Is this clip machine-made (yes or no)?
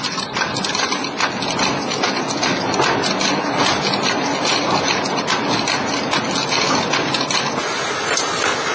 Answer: no